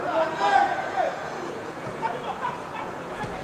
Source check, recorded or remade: remade